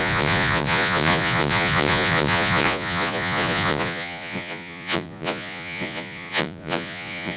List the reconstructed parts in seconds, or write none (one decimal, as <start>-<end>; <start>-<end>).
0.0-7.4